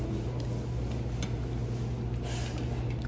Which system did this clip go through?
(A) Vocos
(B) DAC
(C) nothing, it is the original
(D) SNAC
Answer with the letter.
C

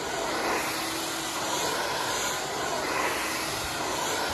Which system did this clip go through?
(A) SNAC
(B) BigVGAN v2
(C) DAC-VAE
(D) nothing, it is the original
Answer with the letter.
D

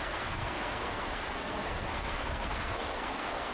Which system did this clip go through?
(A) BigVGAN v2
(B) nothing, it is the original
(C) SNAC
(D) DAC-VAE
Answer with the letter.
C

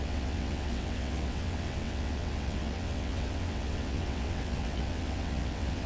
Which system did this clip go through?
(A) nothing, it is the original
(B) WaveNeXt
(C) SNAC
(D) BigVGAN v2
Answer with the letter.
B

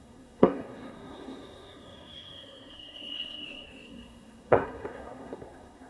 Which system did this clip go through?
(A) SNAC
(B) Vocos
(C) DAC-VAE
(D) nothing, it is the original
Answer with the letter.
A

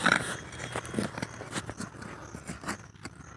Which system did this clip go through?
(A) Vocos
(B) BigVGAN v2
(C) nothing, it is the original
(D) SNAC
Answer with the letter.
C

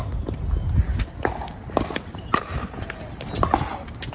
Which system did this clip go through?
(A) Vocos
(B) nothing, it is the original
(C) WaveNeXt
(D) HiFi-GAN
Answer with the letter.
B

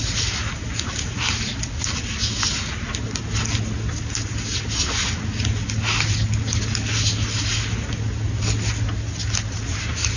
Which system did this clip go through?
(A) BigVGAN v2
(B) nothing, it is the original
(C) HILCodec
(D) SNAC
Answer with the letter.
B